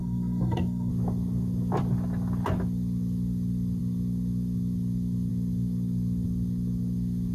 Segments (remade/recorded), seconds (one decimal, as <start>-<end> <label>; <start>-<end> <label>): 0.0-0.9 remade; 0.9-7.3 recorded